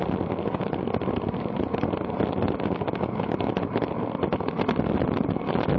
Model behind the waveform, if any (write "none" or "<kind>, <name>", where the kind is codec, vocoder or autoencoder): none